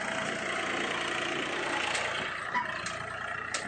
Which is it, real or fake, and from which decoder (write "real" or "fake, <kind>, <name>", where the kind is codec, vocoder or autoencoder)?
real